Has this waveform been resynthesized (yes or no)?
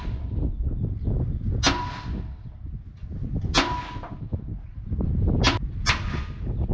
no